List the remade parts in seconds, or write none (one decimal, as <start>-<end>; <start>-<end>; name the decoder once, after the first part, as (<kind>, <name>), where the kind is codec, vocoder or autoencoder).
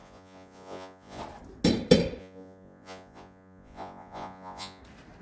0.0-1.2 (vocoder, Vocos); 2.2-4.8